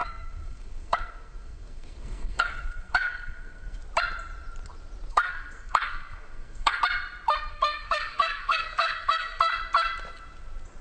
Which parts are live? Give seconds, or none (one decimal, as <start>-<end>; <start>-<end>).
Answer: 3.8-5.1; 6.8-7.5; 9.5-10.8